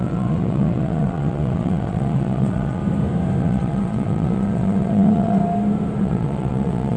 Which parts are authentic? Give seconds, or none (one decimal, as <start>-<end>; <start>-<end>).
2.8-3.4; 5.4-6.0